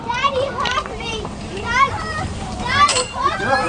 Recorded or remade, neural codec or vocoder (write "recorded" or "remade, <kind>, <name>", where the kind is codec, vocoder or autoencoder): remade, vocoder, BigVGAN v2